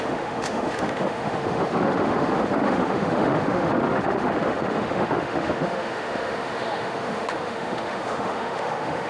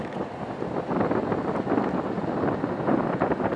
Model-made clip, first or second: first